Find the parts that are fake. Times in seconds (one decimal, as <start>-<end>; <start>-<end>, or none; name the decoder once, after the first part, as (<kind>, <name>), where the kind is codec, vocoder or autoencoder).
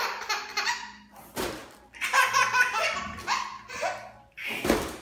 none